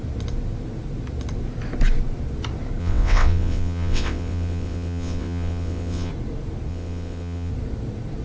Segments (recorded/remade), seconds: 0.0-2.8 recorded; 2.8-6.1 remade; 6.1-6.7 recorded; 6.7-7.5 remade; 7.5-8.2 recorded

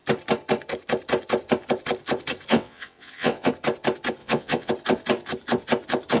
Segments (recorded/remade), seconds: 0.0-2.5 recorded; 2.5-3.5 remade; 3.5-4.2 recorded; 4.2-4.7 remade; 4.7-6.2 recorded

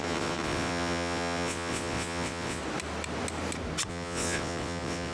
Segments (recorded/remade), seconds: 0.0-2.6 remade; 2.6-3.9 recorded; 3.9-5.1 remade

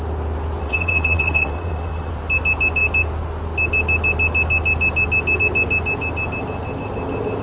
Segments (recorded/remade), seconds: 0.0-0.6 recorded; 0.6-2.1 remade; 2.1-7.4 recorded